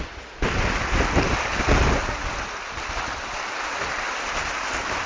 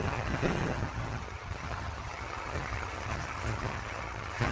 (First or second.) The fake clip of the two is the second